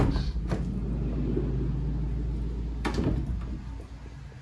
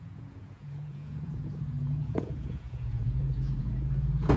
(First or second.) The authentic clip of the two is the first